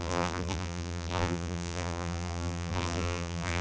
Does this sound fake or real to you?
fake